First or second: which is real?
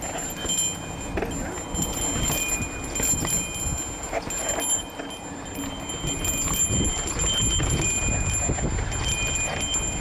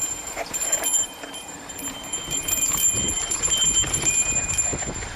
first